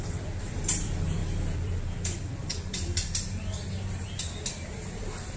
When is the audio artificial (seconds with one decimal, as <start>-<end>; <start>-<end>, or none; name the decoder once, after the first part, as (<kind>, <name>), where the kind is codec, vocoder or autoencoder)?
0.0-5.4 (vocoder, BigVGAN v2)